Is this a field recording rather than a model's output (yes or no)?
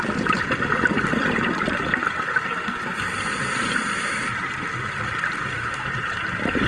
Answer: yes